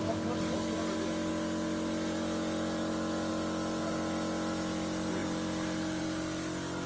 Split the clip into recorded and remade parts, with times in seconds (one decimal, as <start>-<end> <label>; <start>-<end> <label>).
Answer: 0.0-6.9 recorded